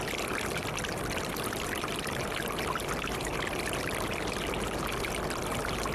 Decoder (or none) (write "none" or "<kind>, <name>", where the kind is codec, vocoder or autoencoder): none